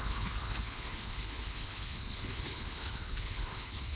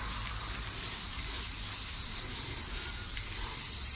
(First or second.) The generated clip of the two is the first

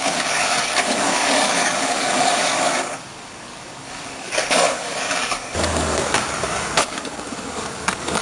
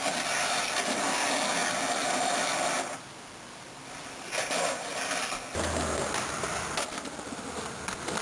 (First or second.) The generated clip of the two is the first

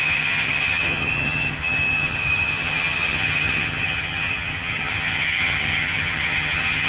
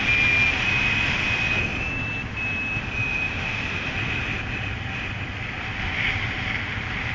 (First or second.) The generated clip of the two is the first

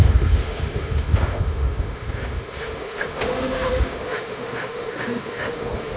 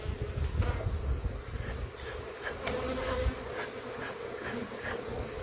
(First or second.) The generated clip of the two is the first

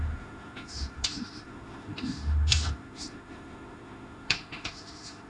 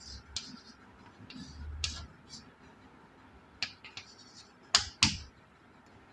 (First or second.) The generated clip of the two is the first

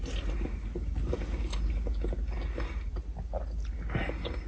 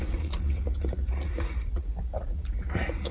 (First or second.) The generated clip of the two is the second